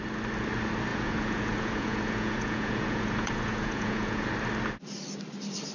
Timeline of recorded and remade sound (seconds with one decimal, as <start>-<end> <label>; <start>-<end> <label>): 0.0-0.9 recorded; 0.9-4.3 remade; 4.3-5.7 recorded